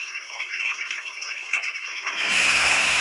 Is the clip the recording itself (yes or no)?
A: no